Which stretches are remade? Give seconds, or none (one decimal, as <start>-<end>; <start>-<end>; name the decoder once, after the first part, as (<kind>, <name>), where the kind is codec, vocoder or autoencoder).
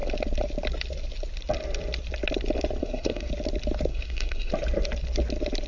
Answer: 2.8-3.3 (codec, SNAC); 3.9-4.5